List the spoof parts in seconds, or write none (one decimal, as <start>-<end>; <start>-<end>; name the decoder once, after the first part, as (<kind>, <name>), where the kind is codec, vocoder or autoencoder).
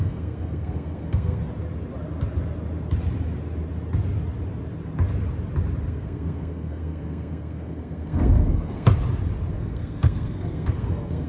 0.0-1.4 (codec, SNAC); 5.8-8.9; 9.5-11.3